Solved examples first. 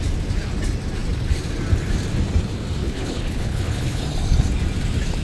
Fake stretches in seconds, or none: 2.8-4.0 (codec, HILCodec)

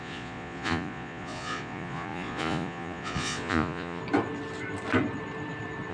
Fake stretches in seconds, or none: 0.0-4.0 (vocoder, Vocos)

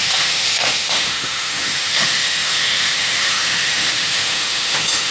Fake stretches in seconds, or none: 0.0-5.1 (autoencoder, DAC-VAE)

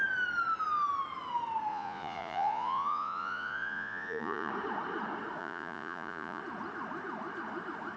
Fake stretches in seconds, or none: 1.7-4.5 (vocoder, Vocos); 5.4-6.4

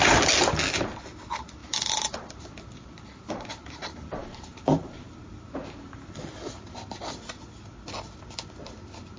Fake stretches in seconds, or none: 1.6-5.2 (vocoder, BigVGAN v2)

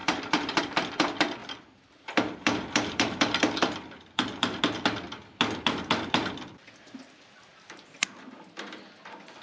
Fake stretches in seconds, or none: 0.0-0.6 (vocoder, BigVGAN v2); 1.4-4.6; 6.6-8.1